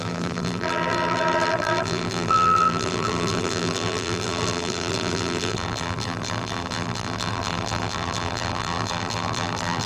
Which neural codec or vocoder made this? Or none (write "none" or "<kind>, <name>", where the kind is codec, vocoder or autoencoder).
vocoder, BigVGAN v2